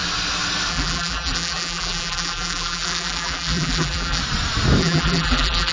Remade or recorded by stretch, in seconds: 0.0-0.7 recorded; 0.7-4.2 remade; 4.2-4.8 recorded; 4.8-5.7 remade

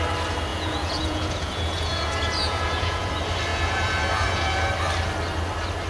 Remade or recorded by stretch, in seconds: 0.0-0.5 recorded; 0.5-3.1 remade; 3.1-3.5 recorded; 3.5-4.7 remade; 4.7-5.9 recorded

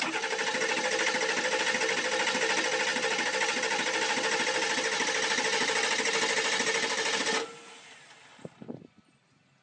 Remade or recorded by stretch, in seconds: 0.0-8.3 recorded; 8.3-8.8 remade; 8.8-9.6 recorded

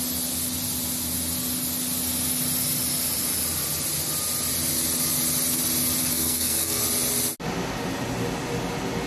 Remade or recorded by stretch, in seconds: 0.0-6.0 recorded; 6.0-6.8 remade; 6.8-9.1 recorded

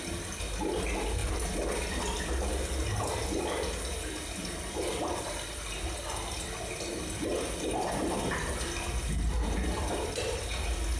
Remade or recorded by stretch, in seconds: 0.0-11.0 recorded

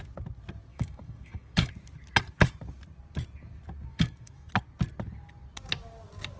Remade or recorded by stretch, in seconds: 0.0-0.7 recorded; 0.7-1.7 remade; 1.7-3.9 recorded; 3.9-4.5 remade; 4.5-6.4 recorded

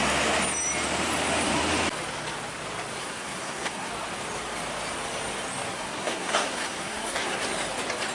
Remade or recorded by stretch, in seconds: 0.0-3.0 recorded; 3.0-3.9 remade; 3.9-5.7 recorded; 5.7-7.3 remade; 7.3-8.1 recorded